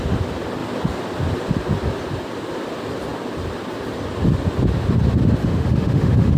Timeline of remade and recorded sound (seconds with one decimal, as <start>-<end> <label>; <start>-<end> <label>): 0.0-5.4 recorded; 5.4-6.4 remade